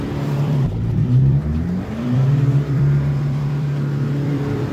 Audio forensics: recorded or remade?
remade